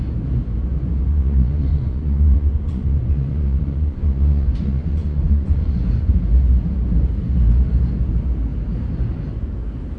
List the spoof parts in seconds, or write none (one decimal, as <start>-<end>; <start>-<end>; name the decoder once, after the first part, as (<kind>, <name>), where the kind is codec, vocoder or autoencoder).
1.1-6.1 (vocoder, Vocos)